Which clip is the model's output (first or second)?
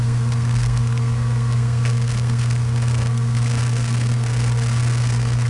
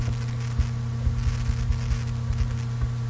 first